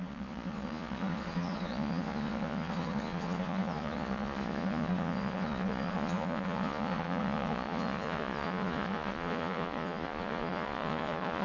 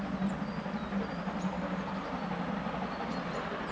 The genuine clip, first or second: second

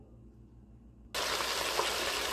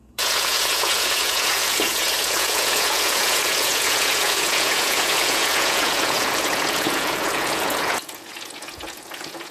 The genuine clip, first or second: first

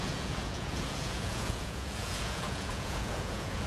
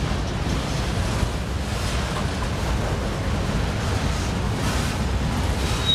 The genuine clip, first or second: second